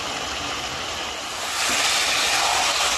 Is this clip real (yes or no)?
yes